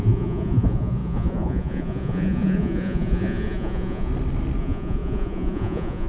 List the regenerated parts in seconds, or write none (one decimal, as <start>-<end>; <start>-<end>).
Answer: 0.0-4.1; 4.6-6.1